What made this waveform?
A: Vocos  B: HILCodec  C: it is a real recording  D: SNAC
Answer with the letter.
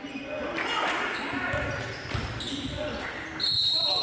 C